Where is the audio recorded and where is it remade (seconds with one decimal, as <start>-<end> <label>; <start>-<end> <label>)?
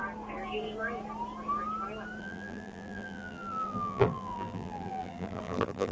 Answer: 0.0-2.2 recorded; 2.2-5.9 remade